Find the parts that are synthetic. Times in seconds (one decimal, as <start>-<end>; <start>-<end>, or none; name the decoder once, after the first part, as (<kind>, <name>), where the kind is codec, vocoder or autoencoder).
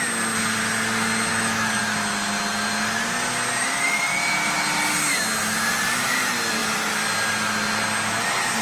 1.3-1.8 (autoencoder, DAC-VAE); 3.6-4.2